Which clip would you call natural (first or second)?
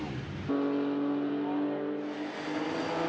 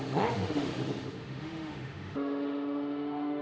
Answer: first